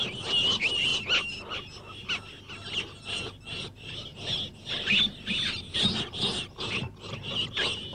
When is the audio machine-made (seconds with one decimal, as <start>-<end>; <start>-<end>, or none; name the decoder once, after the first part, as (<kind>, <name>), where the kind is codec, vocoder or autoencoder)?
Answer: none